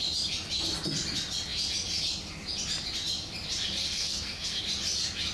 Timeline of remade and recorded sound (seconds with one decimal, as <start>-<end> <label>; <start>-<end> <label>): 0.0-3.8 recorded; 3.8-4.6 remade; 4.6-5.3 recorded